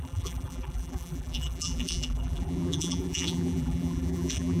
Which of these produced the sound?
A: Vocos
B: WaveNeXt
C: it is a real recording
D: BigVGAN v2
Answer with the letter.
D